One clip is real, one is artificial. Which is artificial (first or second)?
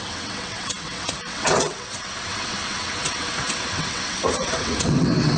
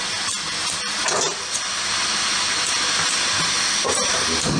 first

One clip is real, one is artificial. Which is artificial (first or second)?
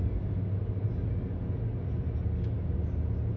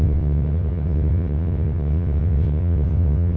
second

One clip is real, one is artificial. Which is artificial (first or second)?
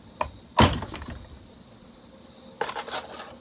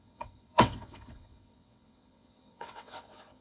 second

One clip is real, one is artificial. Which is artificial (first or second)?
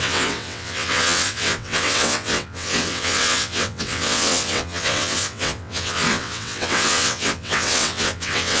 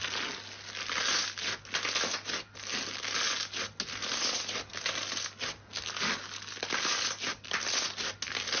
first